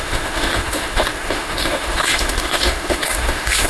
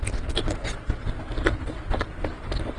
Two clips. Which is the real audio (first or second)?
second